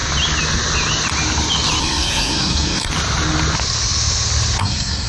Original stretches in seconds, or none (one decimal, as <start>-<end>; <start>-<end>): 0.0-1.8; 2.9-4.6